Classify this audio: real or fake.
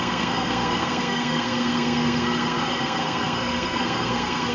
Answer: fake